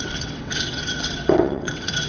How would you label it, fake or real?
fake